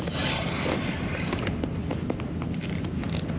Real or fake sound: real